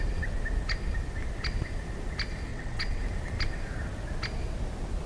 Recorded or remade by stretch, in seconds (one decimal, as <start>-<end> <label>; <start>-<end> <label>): 0.0-2.5 recorded; 2.5-3.0 remade; 3.0-5.1 recorded